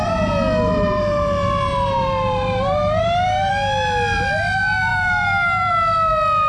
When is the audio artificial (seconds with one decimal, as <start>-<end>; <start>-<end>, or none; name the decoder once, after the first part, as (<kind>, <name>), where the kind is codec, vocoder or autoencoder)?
0.7-3.5 (vocoder, BigVGAN v2); 4.9-5.7